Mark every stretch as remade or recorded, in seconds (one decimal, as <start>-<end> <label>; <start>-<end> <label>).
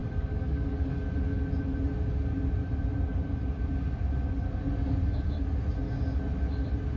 0.0-1.0 remade; 1.0-7.0 recorded